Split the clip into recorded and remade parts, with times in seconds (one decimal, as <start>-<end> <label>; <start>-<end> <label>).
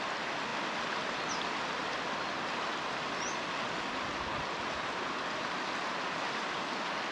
0.0-7.1 recorded